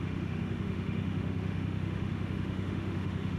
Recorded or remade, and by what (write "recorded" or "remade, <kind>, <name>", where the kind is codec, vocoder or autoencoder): remade, autoencoder, DAC-VAE